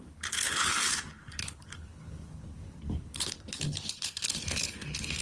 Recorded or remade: remade